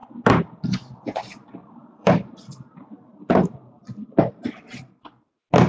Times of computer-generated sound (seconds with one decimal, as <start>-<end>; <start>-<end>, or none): 1.6-5.0